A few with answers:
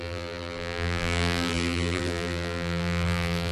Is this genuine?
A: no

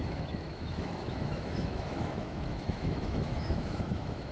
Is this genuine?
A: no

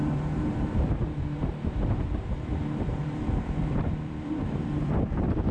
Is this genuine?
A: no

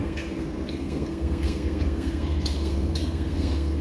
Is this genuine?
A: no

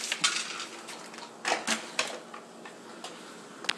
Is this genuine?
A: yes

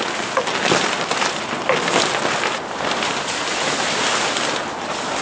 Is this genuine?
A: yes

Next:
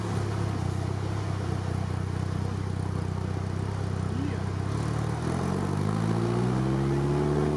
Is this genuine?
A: yes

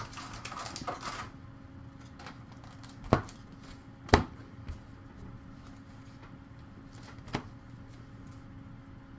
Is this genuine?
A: yes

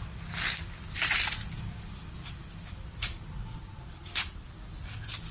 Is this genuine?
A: yes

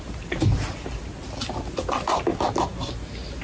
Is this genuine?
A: yes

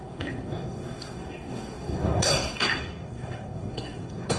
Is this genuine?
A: no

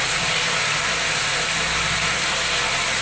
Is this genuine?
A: yes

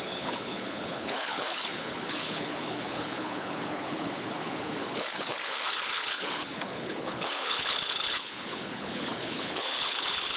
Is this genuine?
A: no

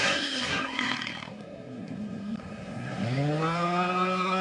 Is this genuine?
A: no